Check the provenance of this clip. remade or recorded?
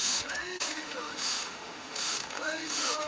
remade